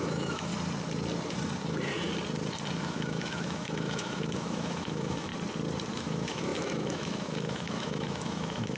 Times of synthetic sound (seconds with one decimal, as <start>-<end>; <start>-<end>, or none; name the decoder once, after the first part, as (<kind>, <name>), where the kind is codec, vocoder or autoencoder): 0.0-0.5 (autoencoder, DAC-VAE); 2.8-5.3; 5.9-8.8